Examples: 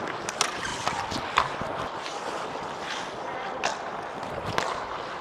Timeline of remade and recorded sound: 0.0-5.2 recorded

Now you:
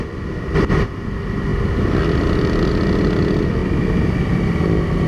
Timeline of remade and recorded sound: 0.0-5.1 recorded